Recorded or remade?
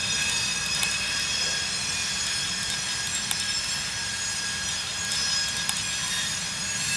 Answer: recorded